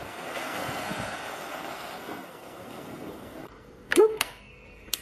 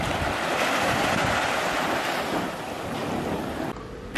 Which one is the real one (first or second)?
second